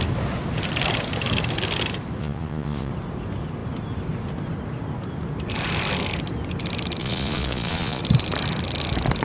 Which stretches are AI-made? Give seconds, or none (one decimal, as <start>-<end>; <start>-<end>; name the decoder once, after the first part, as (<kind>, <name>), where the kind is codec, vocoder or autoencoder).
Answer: 2.2-2.9 (vocoder, Vocos); 7.0-8.0